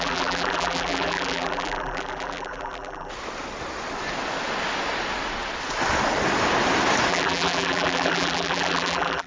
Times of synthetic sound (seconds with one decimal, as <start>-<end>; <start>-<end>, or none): 0.0-3.1; 7.1-9.3